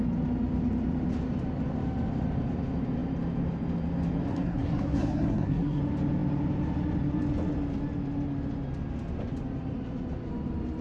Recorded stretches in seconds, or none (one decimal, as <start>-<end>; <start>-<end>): 0.0-4.3; 5.8-10.8